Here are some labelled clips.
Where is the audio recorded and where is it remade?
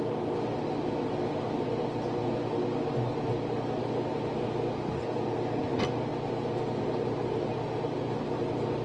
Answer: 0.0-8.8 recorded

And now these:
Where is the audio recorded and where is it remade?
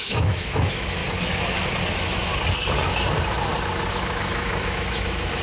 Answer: 0.0-1.0 remade; 1.0-1.9 recorded; 1.9-2.3 remade; 2.3-3.9 recorded; 3.9-5.4 remade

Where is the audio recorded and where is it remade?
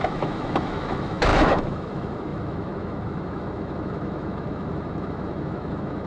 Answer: 0.0-6.1 remade